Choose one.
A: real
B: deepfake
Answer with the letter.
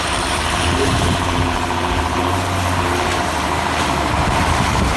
B